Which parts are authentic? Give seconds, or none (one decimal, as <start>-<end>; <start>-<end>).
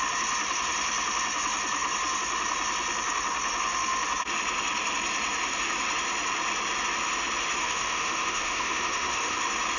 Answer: 0.0-7.6; 9.4-9.8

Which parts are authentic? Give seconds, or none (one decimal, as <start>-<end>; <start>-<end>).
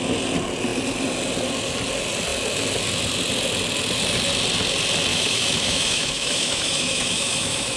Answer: 0.0-5.1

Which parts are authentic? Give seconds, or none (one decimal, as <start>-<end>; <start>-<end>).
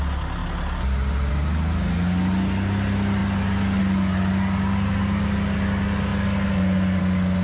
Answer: 0.0-7.4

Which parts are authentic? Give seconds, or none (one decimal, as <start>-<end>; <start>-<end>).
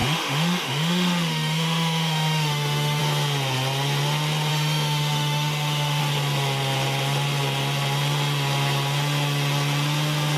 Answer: 3.0-4.5; 6.0-10.4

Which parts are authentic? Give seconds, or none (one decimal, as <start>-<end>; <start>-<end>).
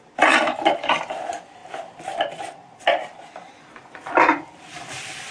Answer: 0.0-5.3